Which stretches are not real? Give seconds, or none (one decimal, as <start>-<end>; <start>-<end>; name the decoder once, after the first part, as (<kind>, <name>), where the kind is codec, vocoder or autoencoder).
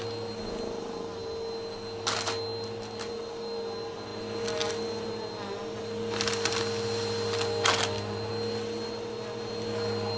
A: none